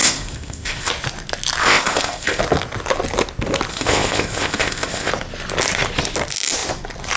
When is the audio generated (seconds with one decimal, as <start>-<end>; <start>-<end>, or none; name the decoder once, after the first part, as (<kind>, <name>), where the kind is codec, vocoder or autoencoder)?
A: 0.0-0.9 (codec, ZipCodec); 1.6-2.4; 3.7-5.1